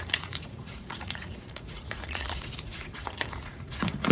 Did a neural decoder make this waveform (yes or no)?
yes